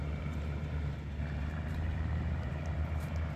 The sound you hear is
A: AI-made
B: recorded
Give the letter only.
A